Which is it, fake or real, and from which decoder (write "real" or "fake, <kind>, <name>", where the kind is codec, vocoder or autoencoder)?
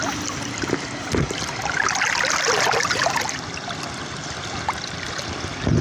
real